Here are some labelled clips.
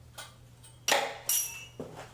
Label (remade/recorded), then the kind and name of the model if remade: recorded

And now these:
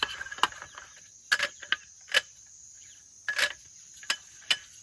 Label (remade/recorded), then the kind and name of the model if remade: recorded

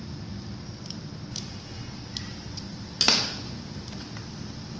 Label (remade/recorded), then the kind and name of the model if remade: recorded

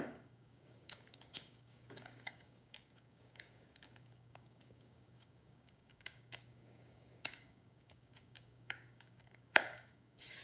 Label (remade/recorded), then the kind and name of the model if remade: remade, codec, DAC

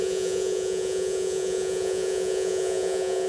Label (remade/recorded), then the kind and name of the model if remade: remade, vocoder, Vocos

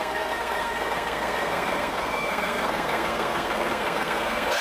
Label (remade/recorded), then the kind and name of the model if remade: remade, codec, SNAC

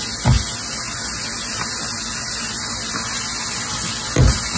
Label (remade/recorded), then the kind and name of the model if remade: recorded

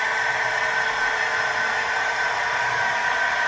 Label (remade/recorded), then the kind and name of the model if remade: remade, vocoder, BigVGAN v2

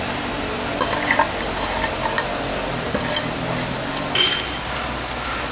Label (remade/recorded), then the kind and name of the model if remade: recorded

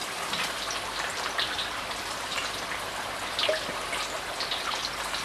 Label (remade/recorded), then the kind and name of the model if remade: recorded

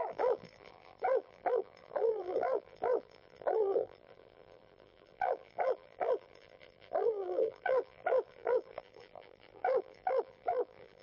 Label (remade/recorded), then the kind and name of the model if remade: remade, vocoder, BigVGAN v2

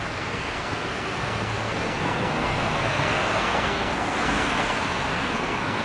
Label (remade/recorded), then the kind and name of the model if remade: remade, codec, SNAC